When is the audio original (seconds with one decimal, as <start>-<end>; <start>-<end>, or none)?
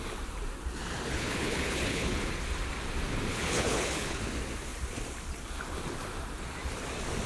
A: 0.0-1.1; 2.3-3.3; 4.2-7.3